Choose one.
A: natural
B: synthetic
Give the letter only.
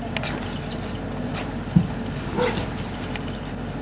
A